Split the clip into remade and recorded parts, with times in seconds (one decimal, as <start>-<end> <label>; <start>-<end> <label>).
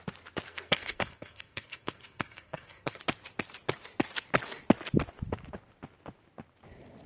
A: 0.0-0.5 recorded; 0.5-3.0 remade; 3.0-7.1 recorded